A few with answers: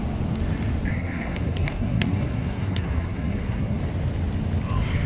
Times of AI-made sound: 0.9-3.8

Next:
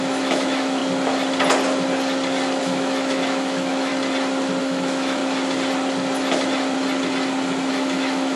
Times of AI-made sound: 0.0-0.8; 2.6-3.9; 4.6-5.2; 7.7-8.4

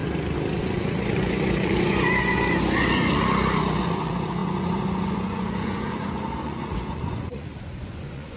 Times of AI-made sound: 0.6-3.2; 3.8-8.4

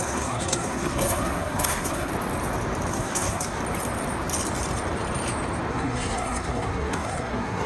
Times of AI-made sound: 0.0-2.1; 2.9-3.6; 5.7-7.7

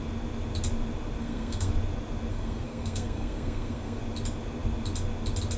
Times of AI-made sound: 1.2-1.7; 2.3-4.0

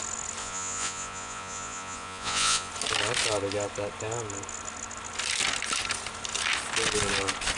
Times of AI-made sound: 0.4-2.7